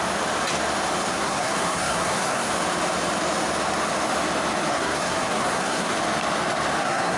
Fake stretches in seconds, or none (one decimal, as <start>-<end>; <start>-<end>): 1.1-2.5; 4.7-5.9; 6.8-7.2